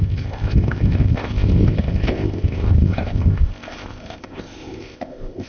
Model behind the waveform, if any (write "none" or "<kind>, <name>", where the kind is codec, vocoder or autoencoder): codec, ZipCodec